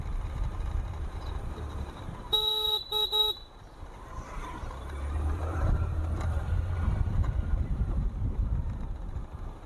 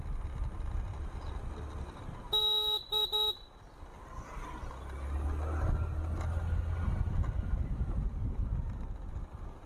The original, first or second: second